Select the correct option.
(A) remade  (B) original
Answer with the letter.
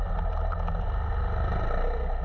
B